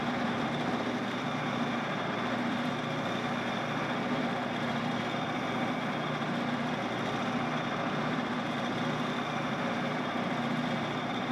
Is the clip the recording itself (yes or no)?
no